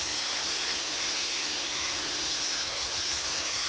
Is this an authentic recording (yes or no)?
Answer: no